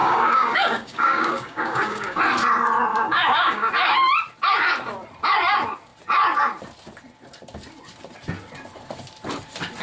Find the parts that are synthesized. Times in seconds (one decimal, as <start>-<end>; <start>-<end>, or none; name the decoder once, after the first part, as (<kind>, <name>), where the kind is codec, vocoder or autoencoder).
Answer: 0.0-2.2 (codec, DAC); 2.9-3.7